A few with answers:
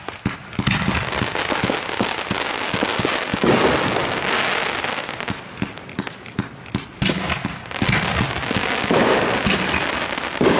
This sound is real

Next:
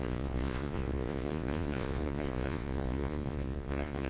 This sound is fake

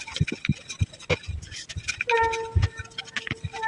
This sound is real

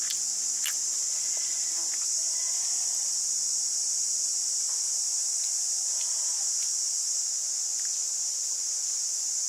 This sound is real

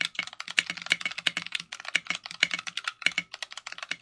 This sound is real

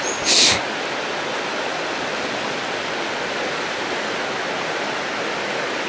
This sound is real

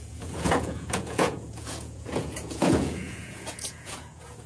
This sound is fake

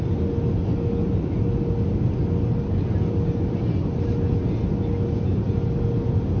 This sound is real